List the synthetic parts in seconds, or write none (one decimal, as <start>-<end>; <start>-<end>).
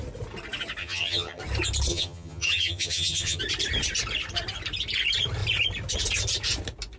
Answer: 0.8-1.4; 1.9-3.4